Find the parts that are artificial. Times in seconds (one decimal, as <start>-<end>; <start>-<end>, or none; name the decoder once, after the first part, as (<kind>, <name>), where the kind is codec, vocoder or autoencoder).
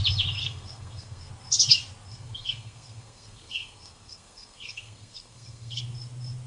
0.4-1.3 (codec, SNAC); 2.1-5.8